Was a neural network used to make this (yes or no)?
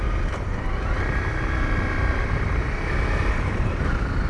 no